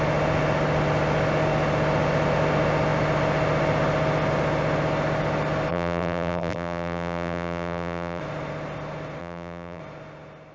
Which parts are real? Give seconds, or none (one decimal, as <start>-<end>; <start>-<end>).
0.0-5.7; 8.2-9.2; 9.8-10.5